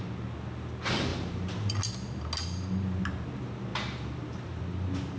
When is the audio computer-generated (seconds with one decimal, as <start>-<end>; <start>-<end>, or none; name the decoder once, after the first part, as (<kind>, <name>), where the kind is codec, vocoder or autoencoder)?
1.1-1.8 (vocoder, BigVGAN v2); 3.7-4.6